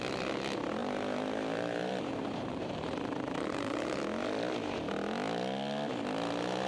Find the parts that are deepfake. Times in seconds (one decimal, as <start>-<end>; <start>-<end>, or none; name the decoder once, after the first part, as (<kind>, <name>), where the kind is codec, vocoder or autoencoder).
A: 0.8-4.0 (vocoder, BigVGAN v2)